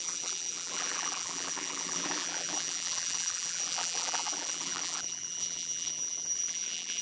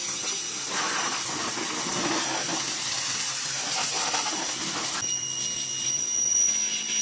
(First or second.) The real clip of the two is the second